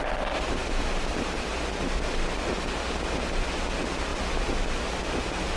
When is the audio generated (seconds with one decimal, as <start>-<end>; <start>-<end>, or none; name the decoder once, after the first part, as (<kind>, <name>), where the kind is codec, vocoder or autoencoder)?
none